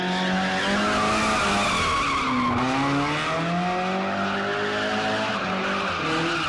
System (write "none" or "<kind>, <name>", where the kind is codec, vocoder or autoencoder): none